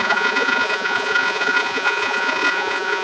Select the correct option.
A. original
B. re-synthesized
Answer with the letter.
B